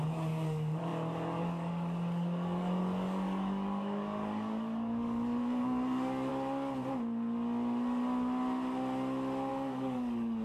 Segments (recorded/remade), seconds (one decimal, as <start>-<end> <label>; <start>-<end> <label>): 0.0-6.3 remade; 6.3-9.5 recorded; 9.5-10.4 remade